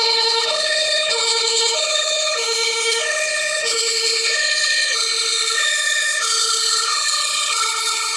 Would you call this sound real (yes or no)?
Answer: no